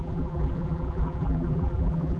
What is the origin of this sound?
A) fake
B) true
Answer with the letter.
A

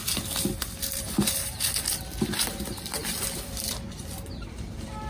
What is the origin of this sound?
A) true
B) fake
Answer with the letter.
B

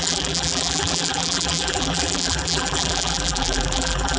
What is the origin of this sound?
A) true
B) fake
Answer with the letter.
B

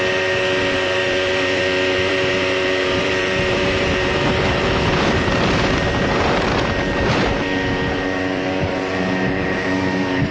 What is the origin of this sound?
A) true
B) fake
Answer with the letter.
B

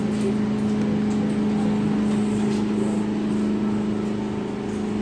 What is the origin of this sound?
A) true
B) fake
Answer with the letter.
A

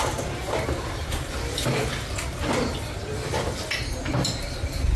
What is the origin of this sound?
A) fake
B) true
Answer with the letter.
B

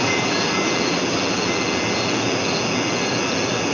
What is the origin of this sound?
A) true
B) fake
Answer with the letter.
B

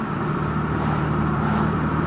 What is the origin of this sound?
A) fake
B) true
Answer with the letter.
A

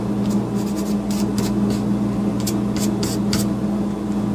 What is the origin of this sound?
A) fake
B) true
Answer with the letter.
B